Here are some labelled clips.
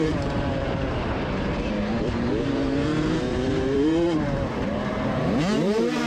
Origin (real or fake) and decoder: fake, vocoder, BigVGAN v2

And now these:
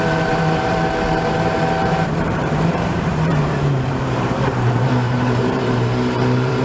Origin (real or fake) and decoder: fake, vocoder, BigVGAN v2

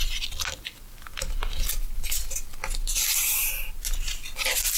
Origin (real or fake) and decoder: real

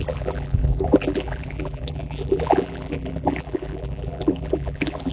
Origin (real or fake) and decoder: fake, vocoder, BigVGAN v2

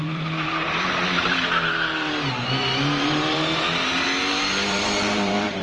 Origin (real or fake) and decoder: fake, vocoder, BigVGAN v2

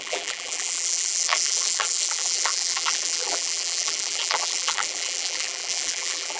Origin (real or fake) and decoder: fake, vocoder, BigVGAN v2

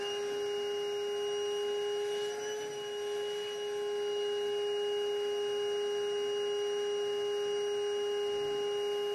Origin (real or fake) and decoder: real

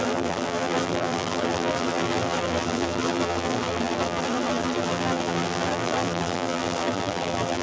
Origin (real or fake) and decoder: fake, vocoder, BigVGAN v2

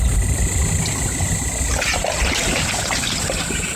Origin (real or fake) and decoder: real